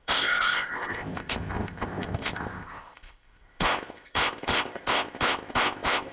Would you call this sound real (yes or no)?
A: no